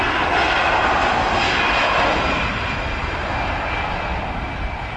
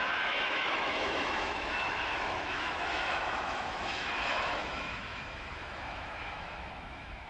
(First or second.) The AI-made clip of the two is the second